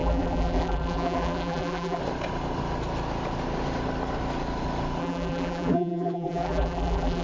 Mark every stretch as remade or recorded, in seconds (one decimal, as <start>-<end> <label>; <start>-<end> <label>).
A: 0.0-2.0 remade; 2.0-5.0 recorded; 5.0-7.2 remade